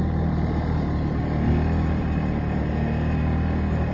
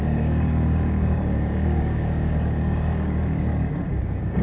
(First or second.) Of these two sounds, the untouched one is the first